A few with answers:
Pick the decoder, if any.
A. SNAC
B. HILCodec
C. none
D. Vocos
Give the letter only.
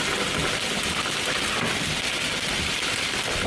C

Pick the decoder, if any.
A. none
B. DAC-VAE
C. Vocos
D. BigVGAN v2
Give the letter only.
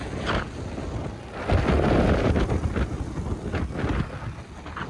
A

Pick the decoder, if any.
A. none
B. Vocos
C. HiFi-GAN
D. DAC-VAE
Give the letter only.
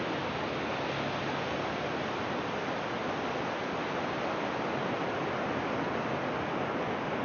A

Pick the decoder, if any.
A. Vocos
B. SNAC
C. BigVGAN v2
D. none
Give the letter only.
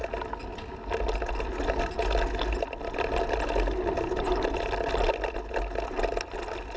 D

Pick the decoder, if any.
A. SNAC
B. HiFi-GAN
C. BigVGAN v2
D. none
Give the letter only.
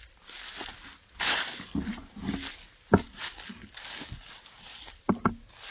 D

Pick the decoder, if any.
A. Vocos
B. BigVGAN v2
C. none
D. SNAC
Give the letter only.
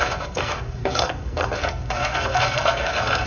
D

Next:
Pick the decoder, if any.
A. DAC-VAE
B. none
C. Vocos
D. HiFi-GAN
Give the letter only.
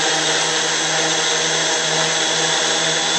B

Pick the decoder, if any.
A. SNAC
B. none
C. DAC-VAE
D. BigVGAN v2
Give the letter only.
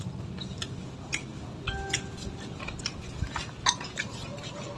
B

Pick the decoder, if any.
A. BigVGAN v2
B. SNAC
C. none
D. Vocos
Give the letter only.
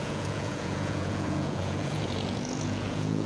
D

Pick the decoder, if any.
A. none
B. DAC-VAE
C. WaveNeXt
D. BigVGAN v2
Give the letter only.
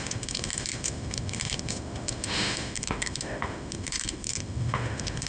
B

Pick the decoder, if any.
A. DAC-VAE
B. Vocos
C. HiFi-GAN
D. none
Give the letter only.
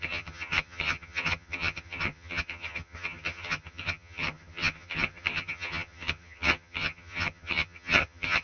C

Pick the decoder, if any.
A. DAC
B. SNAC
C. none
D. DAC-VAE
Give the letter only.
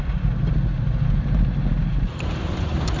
C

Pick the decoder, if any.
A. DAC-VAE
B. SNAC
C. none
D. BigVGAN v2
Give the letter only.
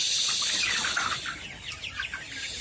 C